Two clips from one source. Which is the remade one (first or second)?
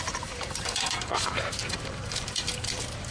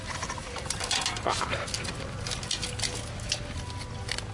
first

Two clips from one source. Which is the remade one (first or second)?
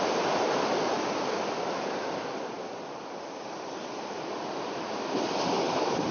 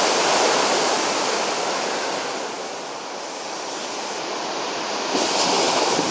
first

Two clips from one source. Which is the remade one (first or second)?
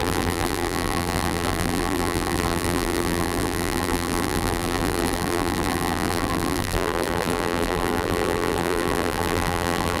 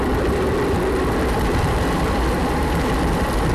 first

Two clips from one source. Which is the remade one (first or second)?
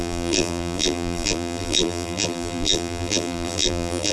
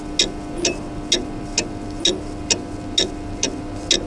first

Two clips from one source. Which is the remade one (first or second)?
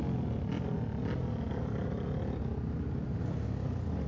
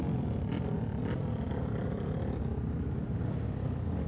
second